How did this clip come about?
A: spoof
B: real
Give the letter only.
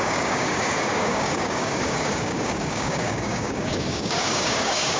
A